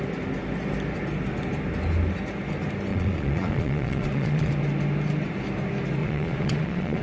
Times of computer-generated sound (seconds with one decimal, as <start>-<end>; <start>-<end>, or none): 2.9-4.5; 6.0-7.0